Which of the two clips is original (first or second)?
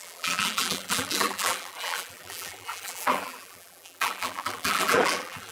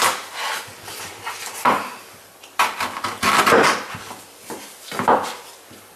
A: second